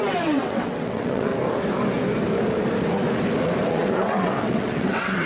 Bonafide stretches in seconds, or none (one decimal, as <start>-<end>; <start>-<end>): 1.3-3.7